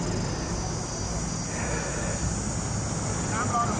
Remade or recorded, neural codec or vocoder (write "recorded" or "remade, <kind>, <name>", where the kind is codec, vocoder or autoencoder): recorded